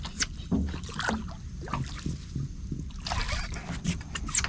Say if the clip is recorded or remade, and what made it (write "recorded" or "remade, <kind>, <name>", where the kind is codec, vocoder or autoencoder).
recorded